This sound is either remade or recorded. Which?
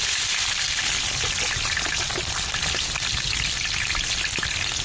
recorded